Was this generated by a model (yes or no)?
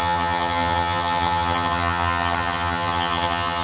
yes